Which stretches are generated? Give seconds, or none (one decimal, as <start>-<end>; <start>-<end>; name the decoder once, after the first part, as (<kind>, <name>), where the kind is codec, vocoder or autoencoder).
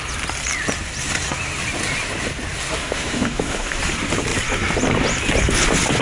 2.8-3.8 (autoencoder, DAC-VAE)